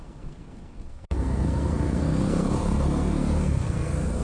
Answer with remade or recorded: remade